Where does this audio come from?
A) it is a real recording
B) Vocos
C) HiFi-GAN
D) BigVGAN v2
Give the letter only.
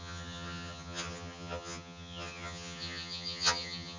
C